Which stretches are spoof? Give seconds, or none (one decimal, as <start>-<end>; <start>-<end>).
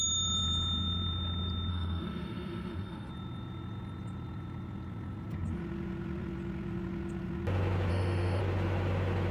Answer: 1.7-3.1; 7.9-8.4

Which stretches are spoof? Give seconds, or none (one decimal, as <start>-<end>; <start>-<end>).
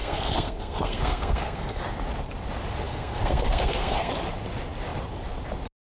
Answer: 0.0-1.8; 2.9-4.1